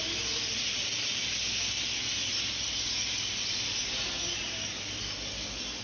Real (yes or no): yes